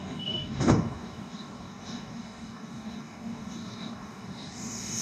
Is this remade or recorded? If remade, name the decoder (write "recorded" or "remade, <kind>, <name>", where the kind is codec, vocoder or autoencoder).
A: remade, codec, DAC